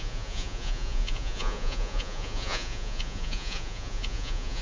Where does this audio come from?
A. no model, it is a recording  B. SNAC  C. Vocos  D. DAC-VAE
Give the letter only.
C